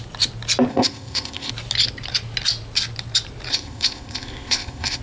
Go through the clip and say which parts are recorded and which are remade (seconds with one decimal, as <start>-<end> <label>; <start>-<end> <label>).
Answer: 0.0-0.7 recorded; 0.7-1.5 remade; 1.5-3.5 recorded; 3.5-5.0 remade